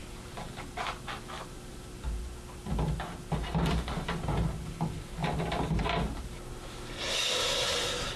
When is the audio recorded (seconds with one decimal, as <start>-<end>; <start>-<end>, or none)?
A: 0.0-8.2

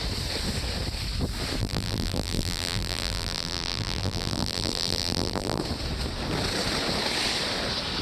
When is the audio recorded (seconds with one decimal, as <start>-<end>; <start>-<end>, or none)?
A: 0.0-1.6; 5.6-8.0